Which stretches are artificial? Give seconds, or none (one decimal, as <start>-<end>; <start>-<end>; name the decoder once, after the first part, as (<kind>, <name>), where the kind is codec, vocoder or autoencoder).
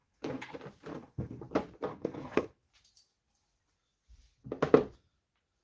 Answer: 0.0-0.5 (codec, SNAC); 0.9-1.4; 1.9-2.7